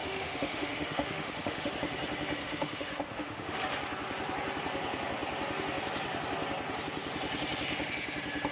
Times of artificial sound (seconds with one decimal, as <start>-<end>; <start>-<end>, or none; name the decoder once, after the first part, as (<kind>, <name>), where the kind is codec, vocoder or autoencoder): 0.0-1.7 (autoencoder, DAC-VAE); 2.4-3.6